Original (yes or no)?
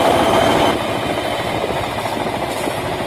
yes